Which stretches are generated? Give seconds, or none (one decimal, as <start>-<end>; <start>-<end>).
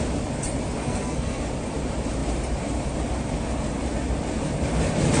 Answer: 0.8-1.4